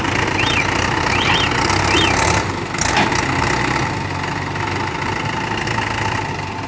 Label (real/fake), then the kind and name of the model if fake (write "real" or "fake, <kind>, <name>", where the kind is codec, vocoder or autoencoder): real